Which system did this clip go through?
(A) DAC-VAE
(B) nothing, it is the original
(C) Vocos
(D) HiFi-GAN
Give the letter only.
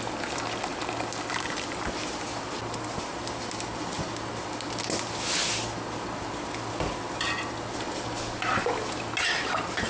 B